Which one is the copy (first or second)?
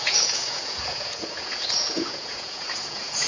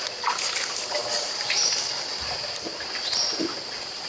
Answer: first